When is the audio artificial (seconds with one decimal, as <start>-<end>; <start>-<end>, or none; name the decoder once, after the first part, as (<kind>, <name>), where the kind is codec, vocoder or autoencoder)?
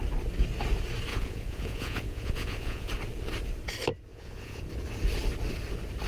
1.1-2.9 (vocoder, Vocos); 4.1-4.7